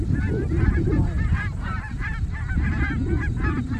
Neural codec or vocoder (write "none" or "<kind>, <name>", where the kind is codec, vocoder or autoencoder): none